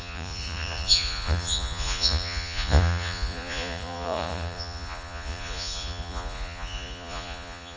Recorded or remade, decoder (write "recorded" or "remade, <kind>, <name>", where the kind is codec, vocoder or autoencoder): remade, vocoder, Vocos